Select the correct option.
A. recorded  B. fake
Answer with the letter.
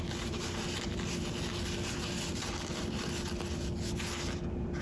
A